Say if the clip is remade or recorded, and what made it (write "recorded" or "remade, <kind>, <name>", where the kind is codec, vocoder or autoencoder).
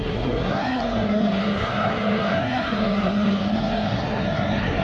remade, codec, SNAC